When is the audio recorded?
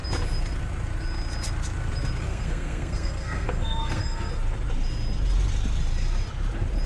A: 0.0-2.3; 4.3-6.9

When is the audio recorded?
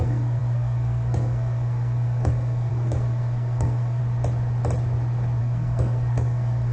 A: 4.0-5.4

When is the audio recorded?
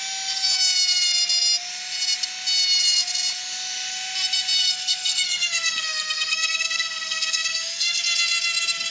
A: 0.0-4.6; 8.0-8.9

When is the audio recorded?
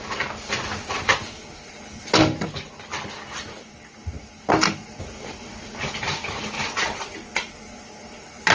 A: 0.0-8.5